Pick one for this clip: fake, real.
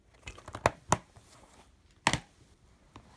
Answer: real